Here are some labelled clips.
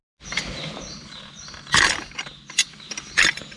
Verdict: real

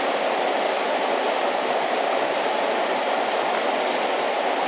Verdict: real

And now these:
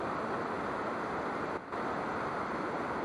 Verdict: real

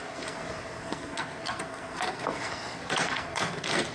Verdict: fake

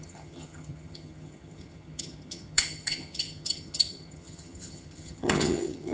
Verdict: fake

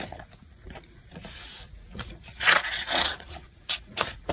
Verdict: fake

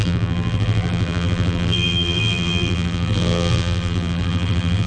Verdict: fake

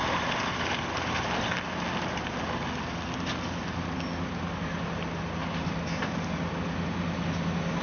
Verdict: real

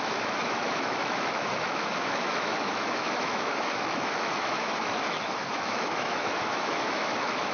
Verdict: fake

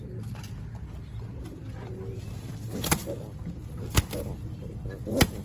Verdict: real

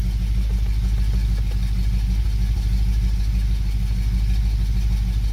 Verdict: real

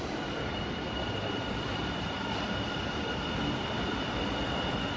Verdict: fake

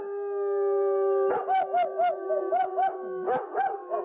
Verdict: real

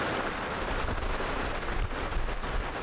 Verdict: real